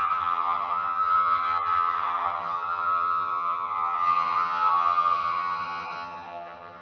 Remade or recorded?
remade